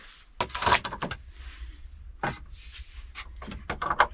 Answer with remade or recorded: recorded